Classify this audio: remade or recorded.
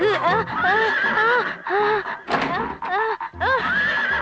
recorded